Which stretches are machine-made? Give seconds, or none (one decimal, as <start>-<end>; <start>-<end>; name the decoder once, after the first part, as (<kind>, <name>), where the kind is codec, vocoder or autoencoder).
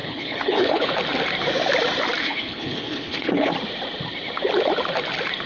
0.0-0.9 (codec, HILCodec); 2.2-3.5